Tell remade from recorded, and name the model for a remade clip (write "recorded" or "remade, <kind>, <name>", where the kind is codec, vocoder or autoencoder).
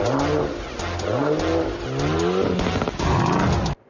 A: recorded